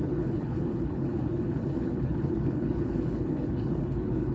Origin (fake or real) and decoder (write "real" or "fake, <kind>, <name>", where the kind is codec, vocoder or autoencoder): fake, codec, HILCodec